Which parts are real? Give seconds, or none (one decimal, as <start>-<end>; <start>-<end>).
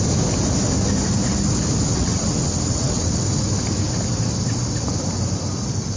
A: 0.0-1.9; 3.1-6.0